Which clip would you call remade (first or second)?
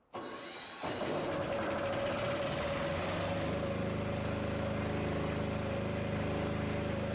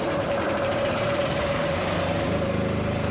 second